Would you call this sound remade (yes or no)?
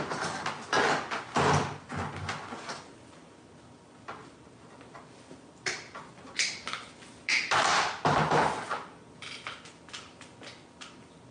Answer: no